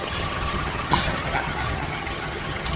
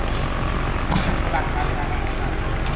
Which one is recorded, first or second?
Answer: second